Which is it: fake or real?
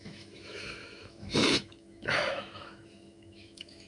fake